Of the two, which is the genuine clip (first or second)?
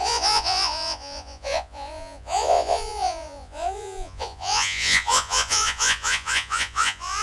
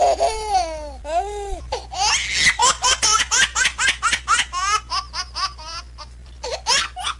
second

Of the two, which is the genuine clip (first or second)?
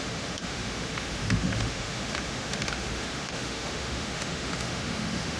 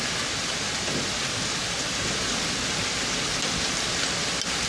second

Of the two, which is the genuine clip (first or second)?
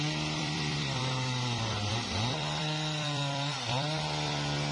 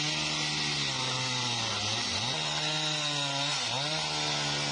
second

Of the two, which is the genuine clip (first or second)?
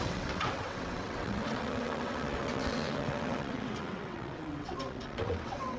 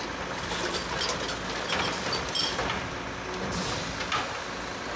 second